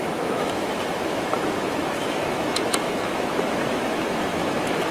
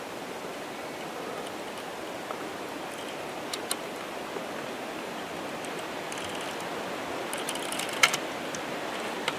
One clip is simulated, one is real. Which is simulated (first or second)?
first